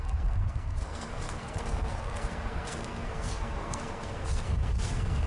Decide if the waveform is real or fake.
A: fake